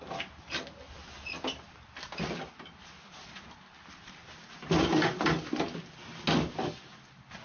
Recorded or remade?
recorded